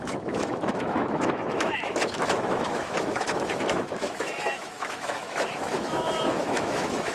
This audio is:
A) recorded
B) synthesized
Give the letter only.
B